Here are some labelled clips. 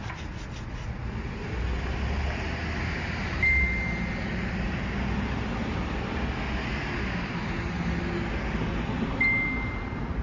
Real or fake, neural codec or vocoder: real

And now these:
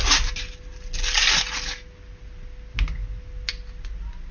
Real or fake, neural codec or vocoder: real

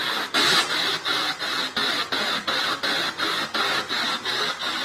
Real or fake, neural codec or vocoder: real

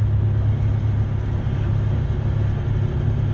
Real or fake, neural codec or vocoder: real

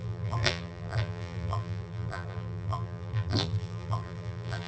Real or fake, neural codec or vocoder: fake, vocoder, BigVGAN v2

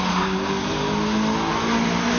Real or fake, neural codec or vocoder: real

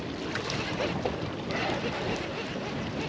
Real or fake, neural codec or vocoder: real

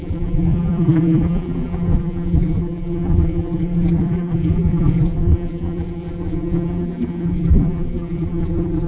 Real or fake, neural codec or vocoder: fake, vocoder, BigVGAN v2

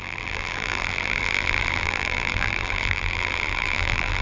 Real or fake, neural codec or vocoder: fake, vocoder, BigVGAN v2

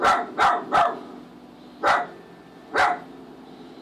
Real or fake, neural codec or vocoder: real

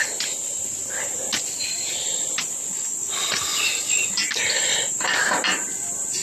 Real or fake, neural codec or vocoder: real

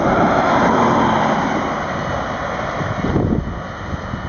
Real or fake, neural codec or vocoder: real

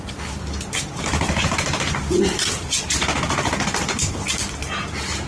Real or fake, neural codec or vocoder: real